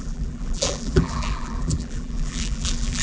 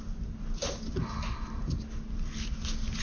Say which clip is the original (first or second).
second